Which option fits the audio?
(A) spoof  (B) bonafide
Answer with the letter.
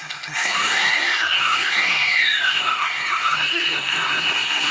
A